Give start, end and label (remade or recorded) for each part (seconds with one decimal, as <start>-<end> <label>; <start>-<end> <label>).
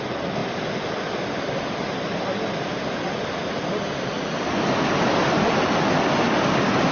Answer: 0.0-6.9 recorded